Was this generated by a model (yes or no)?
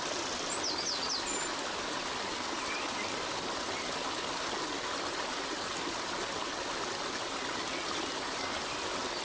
no